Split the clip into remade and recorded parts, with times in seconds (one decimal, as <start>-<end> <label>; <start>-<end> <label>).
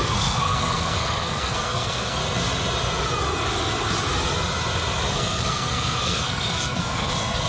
0.0-2.2 remade; 2.2-5.1 recorded; 5.1-7.5 remade